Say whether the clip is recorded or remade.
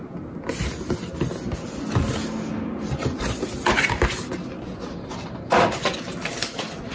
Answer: recorded